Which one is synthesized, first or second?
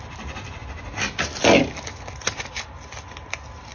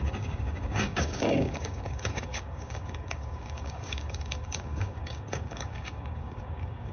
second